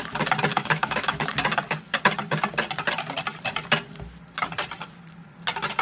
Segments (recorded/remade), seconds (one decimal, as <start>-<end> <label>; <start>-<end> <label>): 0.0-0.5 recorded; 0.5-1.3 remade; 1.3-5.8 recorded